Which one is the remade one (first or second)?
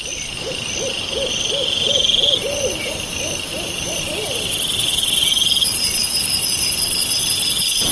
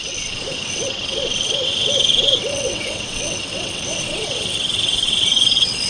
second